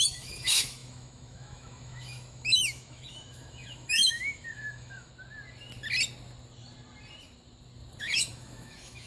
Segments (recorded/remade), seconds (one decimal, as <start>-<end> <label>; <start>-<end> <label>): 0.0-5.1 remade; 5.1-8.0 recorded; 8.0-9.1 remade